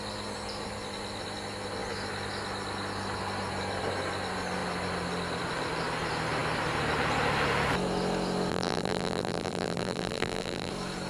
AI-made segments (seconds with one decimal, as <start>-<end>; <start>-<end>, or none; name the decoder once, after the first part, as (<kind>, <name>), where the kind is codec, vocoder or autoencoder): 8.5-10.7 (vocoder, BigVGAN v2)